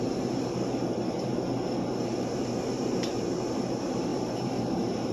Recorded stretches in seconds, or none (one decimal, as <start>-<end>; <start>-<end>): 1.3-2.0

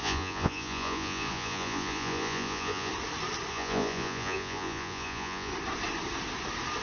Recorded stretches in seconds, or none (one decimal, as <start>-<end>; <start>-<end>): 2.9-3.5; 5.5-6.8

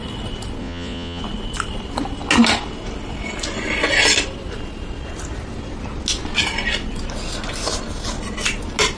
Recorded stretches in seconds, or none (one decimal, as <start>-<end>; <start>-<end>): 0.0-0.6; 1.2-9.0